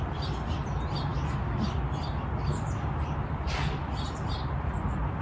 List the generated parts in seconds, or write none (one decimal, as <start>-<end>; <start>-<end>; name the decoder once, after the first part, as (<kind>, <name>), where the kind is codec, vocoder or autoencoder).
none